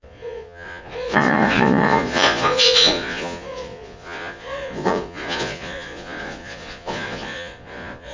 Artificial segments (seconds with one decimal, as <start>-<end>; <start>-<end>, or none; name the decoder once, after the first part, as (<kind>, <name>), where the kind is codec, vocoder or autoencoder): 0.0-8.1 (vocoder, Vocos)

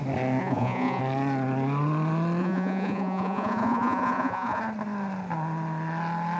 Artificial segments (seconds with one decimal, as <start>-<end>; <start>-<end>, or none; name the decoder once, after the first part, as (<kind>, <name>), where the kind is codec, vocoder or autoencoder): 0.4-1.0 (vocoder, Vocos); 2.4-4.6

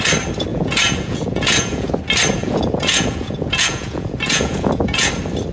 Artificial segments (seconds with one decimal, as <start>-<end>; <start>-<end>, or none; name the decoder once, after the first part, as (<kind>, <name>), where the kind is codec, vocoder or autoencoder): 0.5-1.9 (vocoder, Vocos); 2.4-5.1

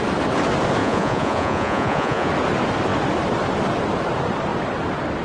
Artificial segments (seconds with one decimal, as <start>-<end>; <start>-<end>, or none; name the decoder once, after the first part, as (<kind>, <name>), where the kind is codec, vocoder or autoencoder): 0.8-2.3 (vocoder, Vocos)

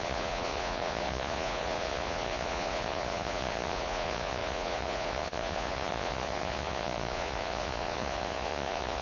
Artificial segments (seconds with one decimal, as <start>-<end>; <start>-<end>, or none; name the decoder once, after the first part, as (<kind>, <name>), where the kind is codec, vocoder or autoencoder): 0.0-9.0 (vocoder, Vocos)

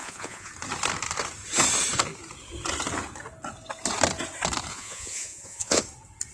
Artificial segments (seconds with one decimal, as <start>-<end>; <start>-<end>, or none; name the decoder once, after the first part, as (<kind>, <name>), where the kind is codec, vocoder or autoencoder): 0.0-0.5 (vocoder, Vocos); 4.7-5.8

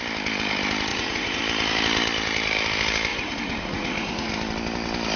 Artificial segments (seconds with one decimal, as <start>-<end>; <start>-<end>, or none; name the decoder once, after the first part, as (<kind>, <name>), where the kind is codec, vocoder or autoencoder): 0.9-1.4 (vocoder, Vocos); 3.1-4.3

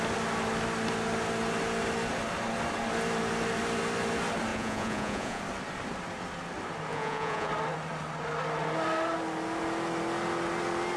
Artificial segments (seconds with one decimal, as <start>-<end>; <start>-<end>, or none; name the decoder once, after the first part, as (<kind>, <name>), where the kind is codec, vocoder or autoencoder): 4.5-5.4 (vocoder, Vocos); 6.9-7.5